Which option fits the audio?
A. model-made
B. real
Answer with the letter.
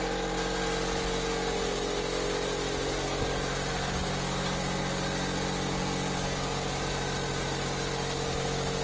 B